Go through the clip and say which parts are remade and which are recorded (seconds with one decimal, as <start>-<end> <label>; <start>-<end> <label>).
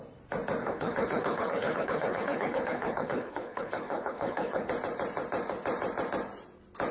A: 0.0-0.6 recorded; 0.6-4.7 remade; 4.7-6.9 recorded